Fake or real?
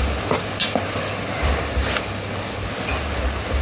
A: real